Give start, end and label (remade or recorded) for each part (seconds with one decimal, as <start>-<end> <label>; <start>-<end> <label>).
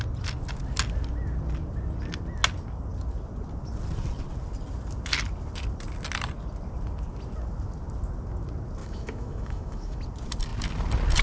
0.0-8.8 recorded; 8.8-10.0 remade; 10.0-11.2 recorded